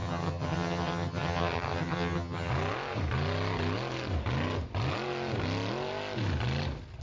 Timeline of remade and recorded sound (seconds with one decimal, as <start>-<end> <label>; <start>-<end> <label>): 0.0-2.5 remade; 2.5-7.0 recorded